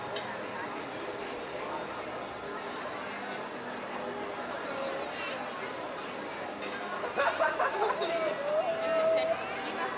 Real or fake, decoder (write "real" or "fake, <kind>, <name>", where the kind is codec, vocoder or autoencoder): real